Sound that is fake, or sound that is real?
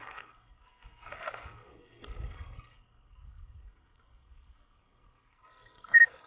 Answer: fake